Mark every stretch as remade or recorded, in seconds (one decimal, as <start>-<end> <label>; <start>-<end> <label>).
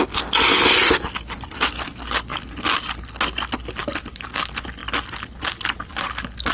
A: 0.0-6.5 recorded